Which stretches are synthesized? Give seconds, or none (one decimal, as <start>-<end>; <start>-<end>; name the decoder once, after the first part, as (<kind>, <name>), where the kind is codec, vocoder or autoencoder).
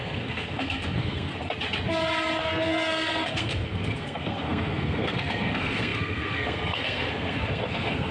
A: 0.0-1.3 (codec, SNAC); 2.4-8.1